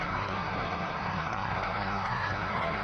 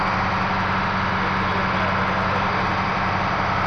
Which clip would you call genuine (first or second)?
second